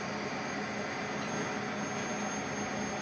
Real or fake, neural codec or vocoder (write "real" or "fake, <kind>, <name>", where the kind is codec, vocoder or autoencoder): real